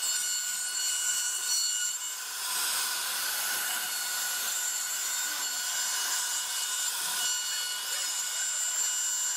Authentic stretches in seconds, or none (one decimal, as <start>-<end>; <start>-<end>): 0.0-9.4